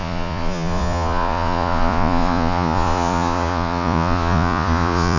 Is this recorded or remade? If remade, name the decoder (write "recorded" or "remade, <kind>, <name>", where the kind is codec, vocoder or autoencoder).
remade, vocoder, Vocos